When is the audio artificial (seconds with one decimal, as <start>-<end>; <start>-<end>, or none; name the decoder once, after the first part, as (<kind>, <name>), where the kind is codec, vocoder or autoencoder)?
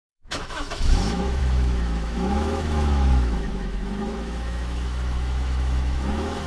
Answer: 0.0-6.5 (autoencoder, DAC-VAE)